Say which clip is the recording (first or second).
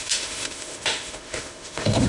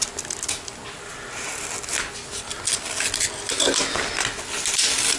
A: second